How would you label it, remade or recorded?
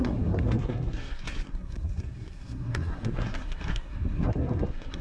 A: remade